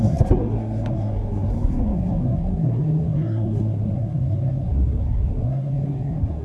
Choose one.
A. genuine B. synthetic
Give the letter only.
B